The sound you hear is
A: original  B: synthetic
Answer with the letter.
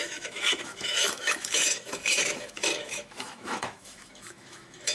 B